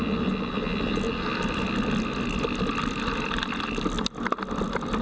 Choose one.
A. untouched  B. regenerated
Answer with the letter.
A